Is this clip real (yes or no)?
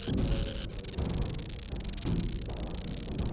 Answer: yes